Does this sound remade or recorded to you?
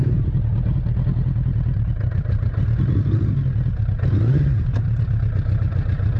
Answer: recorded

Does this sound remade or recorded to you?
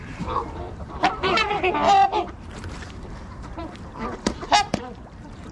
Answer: remade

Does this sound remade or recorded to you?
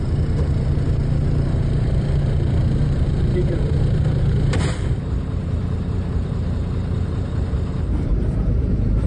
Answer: remade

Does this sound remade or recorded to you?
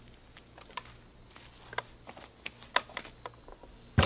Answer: recorded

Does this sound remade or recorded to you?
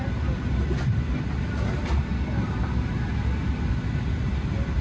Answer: recorded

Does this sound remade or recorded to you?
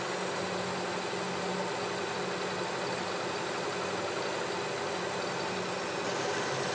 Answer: recorded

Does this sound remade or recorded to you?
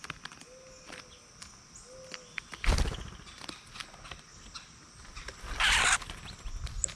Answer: recorded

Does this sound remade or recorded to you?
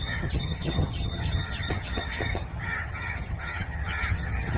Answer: remade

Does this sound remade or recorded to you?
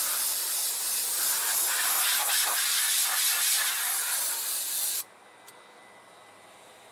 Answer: recorded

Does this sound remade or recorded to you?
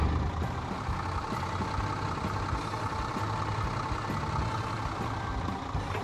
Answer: recorded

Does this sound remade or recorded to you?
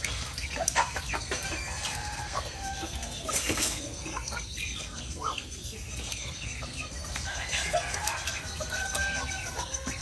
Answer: remade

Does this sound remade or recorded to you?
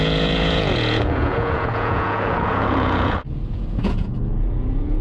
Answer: remade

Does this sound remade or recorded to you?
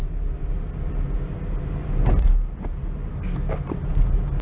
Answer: recorded